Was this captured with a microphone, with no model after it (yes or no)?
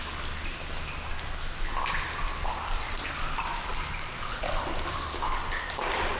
yes